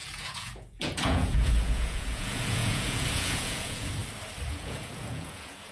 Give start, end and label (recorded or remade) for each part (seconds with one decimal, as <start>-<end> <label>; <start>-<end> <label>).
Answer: 0.0-4.0 remade; 4.0-4.5 recorded; 4.5-5.7 remade